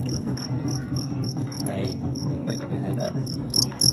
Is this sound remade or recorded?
remade